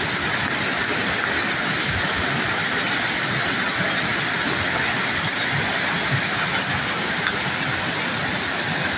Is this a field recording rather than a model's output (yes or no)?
yes